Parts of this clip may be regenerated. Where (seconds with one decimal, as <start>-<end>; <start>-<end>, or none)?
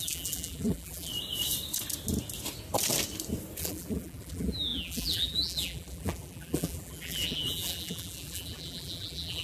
0.0-1.1; 3.6-9.4